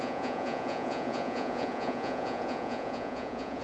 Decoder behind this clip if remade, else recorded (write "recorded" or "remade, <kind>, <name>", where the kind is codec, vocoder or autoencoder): remade, vocoder, Vocos